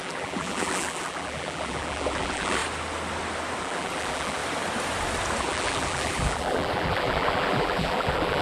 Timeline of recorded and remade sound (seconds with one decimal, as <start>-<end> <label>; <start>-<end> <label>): 0.0-2.6 remade; 2.6-3.6 recorded; 3.6-4.4 remade; 4.4-5.4 recorded; 5.4-8.4 remade